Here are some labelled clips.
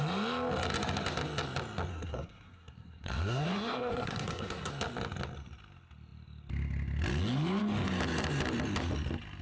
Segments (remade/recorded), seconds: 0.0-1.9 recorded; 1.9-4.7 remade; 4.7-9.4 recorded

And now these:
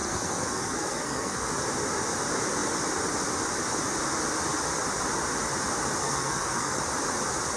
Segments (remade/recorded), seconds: 0.0-1.5 remade; 1.5-6.0 recorded; 6.0-6.8 remade; 6.8-7.6 recorded

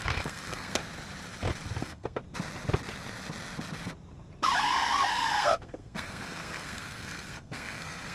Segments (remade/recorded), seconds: 0.0-0.8 remade; 0.8-1.8 recorded; 1.8-2.2 remade; 2.2-4.6 recorded; 4.6-8.1 remade

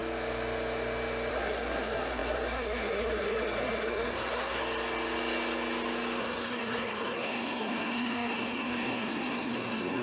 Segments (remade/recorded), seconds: 0.0-1.3 recorded; 1.3-4.6 remade; 4.6-6.2 recorded; 6.2-10.0 remade

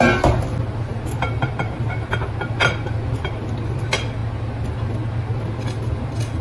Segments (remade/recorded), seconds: 0.0-6.4 recorded

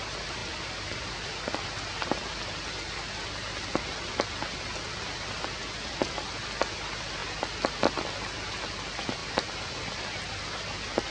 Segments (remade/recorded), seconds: 0.0-11.1 recorded

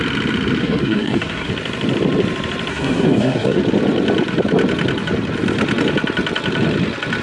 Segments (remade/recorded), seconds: 0.0-0.6 recorded; 0.6-1.5 remade; 1.5-2.7 recorded; 2.7-3.6 remade; 3.6-7.2 recorded

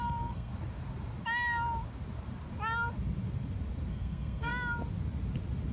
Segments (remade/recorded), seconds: 0.0-0.5 remade; 0.5-3.9 recorded; 3.9-4.5 remade; 4.5-5.7 recorded